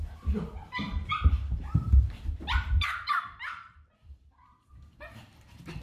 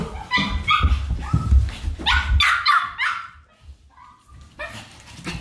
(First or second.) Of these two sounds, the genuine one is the second